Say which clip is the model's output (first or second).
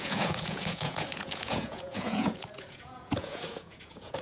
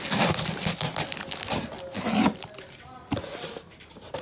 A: first